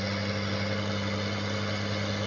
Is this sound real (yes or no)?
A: yes